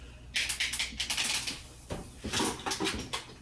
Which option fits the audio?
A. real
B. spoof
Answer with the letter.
A